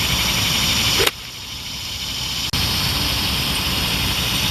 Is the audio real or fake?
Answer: real